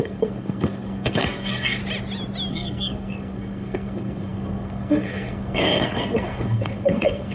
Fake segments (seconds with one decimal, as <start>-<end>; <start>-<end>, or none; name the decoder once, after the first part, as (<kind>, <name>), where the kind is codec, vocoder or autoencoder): 0.0-1.8 (codec, SNAC); 2.5-7.3